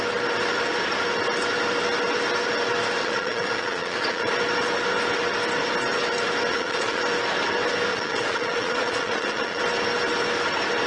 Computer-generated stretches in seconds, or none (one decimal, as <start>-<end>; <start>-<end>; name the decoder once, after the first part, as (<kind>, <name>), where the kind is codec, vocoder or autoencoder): 3.0-4.3 (vocoder, Vocos); 6.5-7.0; 7.9-9.6